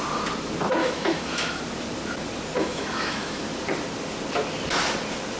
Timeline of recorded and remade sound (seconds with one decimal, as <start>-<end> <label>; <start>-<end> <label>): 0.0-0.8 recorded; 0.8-1.6 remade; 1.6-2.6 recorded; 2.6-3.4 remade; 3.4-5.4 recorded